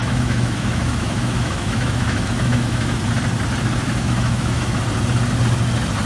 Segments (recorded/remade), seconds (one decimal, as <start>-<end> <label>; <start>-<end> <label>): 0.0-3.0 remade; 3.0-3.8 recorded; 3.8-4.8 remade; 4.8-6.1 recorded

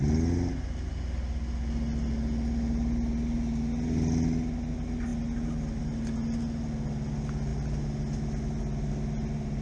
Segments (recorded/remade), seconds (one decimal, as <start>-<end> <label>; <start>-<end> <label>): 0.0-9.6 recorded

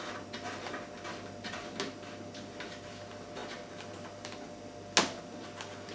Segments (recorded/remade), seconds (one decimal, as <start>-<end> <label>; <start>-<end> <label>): 0.0-5.9 recorded

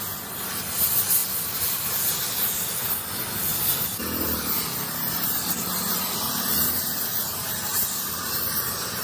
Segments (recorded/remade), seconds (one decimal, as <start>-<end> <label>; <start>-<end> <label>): 0.0-1.2 recorded; 1.2-2.1 remade; 2.1-3.5 recorded; 3.5-4.0 remade; 4.0-5.9 recorded; 5.9-6.8 remade; 6.8-9.0 recorded

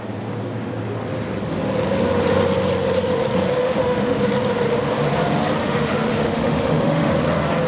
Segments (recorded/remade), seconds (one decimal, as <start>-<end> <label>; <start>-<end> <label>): 0.0-3.6 recorded; 3.6-4.2 remade; 4.2-5.6 recorded; 5.6-7.1 remade; 7.1-7.7 recorded